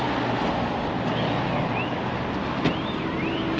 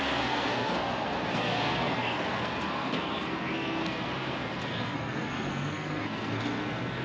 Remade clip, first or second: second